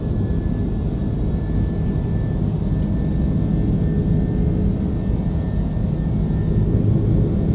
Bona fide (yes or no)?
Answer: yes